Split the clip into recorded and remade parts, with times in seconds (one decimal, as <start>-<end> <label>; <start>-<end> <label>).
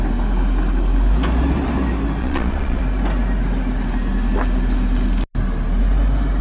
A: 0.0-2.2 recorded; 2.2-2.8 remade; 2.8-6.4 recorded